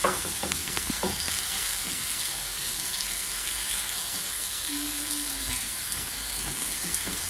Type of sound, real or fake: fake